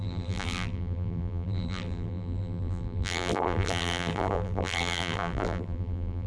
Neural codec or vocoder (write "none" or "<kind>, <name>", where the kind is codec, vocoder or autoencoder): vocoder, BigVGAN v2